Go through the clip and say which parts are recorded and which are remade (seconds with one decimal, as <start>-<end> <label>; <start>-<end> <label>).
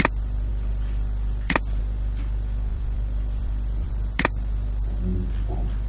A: 0.0-0.5 recorded; 0.5-1.8 remade; 1.8-2.7 recorded; 2.7-3.9 remade; 3.9-5.9 recorded